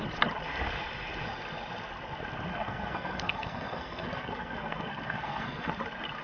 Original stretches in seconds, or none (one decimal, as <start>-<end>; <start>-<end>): 0.0-2.5; 5.7-6.2

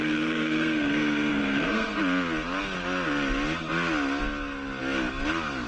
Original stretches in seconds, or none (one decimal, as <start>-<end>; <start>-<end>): 2.0-5.7

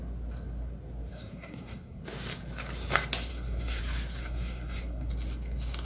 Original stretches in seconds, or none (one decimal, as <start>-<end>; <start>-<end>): 0.0-1.1; 2.0-3.3; 3.8-4.2; 5.1-5.8

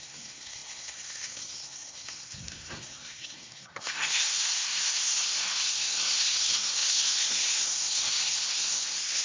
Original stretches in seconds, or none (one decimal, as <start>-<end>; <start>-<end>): none

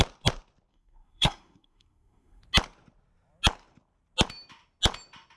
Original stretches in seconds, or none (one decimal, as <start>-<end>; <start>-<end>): 0.0-0.7; 2.4-5.4